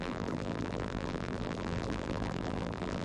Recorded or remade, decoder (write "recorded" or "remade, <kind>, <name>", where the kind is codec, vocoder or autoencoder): remade, vocoder, BigVGAN v2